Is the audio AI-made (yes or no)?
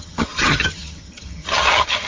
yes